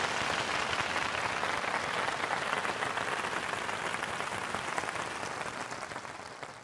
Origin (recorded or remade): recorded